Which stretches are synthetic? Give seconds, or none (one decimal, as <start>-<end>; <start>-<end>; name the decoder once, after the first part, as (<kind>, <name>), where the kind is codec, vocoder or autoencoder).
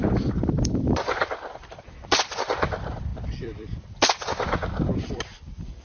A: 0.0-5.8 (vocoder, BigVGAN v2)